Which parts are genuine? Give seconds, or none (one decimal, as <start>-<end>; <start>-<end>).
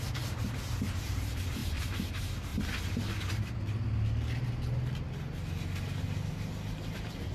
2.5-7.3